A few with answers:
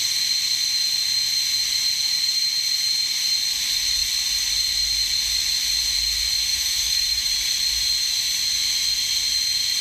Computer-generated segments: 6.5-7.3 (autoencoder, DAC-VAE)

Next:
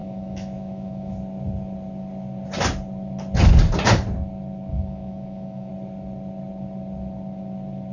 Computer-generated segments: 0.0-1.1 (autoencoder, DAC-VAE); 4.7-5.7

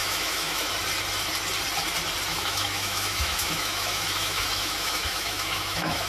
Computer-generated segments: 0.0-0.7 (autoencoder, DAC-VAE); 2.3-6.1

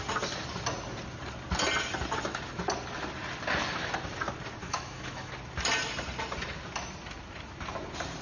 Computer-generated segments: 4.6-5.3 (autoencoder, DAC-VAE)

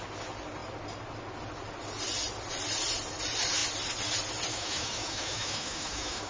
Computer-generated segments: 4.5-6.3 (autoencoder, DAC-VAE)

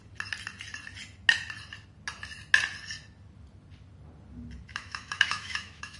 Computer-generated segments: 4.7-6.0 (autoencoder, DAC-VAE)

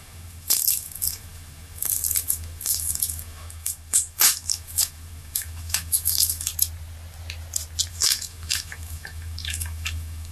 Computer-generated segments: 0.0-6.5 (autoencoder, DAC-VAE); 7.9-10.3